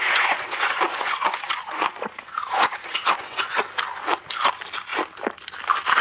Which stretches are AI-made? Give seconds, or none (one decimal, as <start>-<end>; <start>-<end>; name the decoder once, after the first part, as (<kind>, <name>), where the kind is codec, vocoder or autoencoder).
0.0-3.6 (vocoder, Vocos)